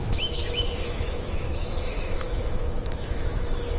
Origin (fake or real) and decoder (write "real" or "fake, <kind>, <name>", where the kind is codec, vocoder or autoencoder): fake, autoencoder, DAC-VAE